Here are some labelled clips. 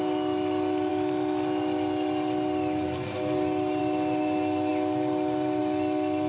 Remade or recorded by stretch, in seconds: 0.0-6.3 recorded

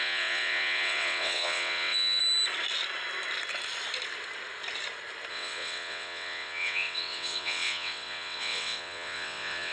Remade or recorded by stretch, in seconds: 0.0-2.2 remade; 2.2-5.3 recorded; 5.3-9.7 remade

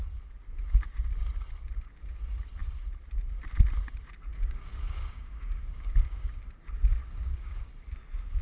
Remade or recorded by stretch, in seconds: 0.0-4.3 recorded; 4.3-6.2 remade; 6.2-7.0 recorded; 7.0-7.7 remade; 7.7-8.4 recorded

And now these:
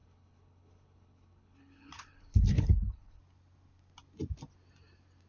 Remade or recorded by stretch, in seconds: 0.0-3.2 remade; 3.2-5.3 recorded